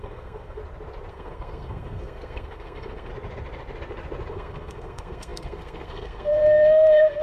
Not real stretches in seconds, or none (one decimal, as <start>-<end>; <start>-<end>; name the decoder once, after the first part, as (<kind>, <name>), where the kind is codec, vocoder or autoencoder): 0.0-0.6 (codec, SNAC); 1.1-3.1; 4.3-7.2